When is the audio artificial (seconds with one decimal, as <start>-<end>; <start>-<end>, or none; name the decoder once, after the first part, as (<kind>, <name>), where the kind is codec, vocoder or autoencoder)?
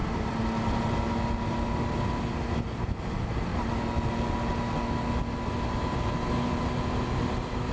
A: 0.0-0.8 (vocoder, BigVGAN v2)